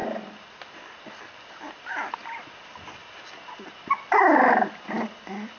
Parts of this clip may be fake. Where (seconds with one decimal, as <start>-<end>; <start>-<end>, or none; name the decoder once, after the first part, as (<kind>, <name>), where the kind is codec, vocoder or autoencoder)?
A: none